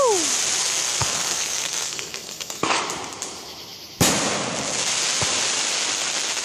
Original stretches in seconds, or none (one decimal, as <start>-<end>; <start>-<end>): 0.0-0.6; 2.8-6.4

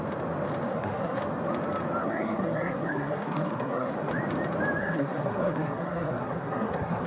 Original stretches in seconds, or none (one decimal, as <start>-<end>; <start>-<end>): 0.0-0.7; 1.2-2.0; 4.1-4.8

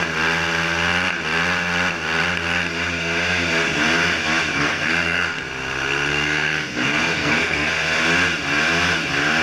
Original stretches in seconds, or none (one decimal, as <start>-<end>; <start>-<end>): 0.0-4.5; 5.4-6.1; 7.7-9.4